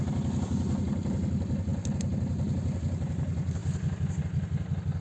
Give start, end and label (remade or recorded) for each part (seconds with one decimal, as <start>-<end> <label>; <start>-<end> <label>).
0.0-5.0 recorded